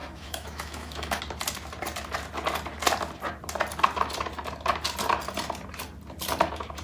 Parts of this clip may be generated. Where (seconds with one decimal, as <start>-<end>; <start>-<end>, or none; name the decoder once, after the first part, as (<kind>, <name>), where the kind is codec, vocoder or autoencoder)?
0.0-1.2 (autoencoder, DAC-VAE)